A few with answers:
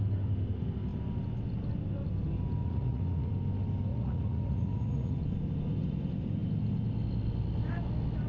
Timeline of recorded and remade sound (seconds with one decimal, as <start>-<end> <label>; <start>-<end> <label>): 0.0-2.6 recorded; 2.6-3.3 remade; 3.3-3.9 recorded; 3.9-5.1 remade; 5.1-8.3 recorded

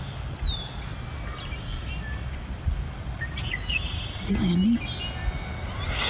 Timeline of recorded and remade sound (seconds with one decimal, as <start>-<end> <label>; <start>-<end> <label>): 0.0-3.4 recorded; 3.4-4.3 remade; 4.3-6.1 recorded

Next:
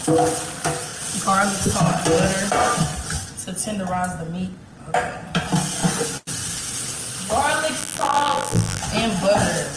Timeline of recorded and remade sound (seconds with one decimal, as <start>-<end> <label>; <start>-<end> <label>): 0.0-7.8 recorded; 7.8-8.8 remade; 8.8-9.8 recorded

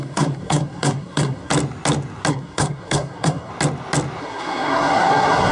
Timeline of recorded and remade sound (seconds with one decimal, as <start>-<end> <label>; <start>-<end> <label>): 0.0-1.5 remade; 1.5-2.3 recorded; 2.3-3.5 remade; 3.5-4.2 recorded; 4.2-5.5 remade